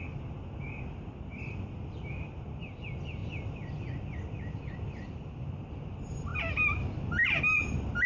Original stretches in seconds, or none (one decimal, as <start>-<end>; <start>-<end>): 0.0-3.2; 5.3-6.3; 7.4-8.1